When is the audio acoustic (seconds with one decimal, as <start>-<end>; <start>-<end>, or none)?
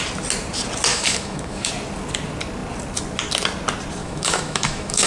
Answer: 0.0-0.9; 1.7-4.0